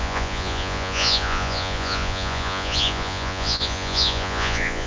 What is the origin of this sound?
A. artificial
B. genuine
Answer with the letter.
A